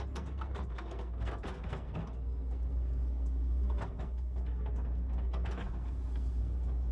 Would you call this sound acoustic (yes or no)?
no